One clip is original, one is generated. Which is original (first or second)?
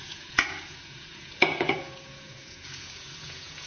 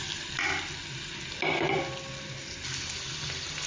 second